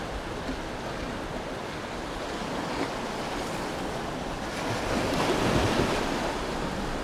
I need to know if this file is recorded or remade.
recorded